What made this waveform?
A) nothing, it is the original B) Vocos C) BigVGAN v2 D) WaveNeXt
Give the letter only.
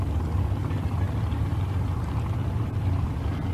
A